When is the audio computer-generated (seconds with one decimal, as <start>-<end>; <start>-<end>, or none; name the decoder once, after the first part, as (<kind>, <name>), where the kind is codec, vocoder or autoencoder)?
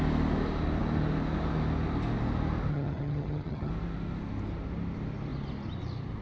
2.7-3.7 (vocoder, HiFi-GAN)